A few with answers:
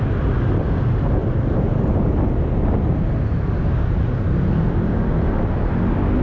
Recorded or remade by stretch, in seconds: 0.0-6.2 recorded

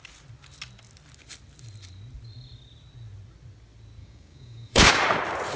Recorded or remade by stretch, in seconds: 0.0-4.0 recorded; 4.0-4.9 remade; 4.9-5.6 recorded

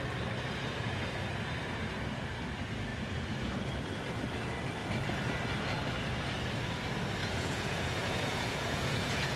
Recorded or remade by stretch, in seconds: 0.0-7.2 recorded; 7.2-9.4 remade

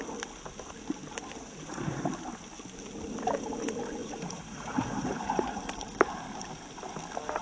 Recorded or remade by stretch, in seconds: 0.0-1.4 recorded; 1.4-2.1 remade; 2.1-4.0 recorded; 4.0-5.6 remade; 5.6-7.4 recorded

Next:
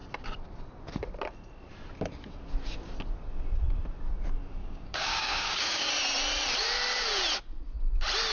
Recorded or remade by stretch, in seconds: 0.0-4.6 recorded; 4.6-5.9 remade; 5.9-8.3 recorded